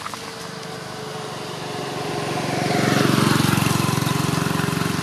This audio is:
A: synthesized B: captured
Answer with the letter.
B